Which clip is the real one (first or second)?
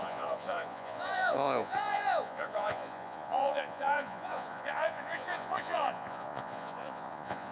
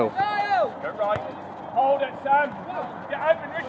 second